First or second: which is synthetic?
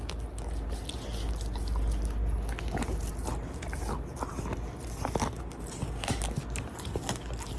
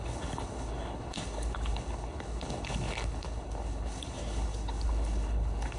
second